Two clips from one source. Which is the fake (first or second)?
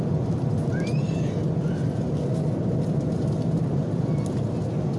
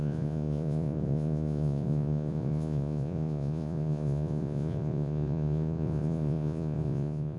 second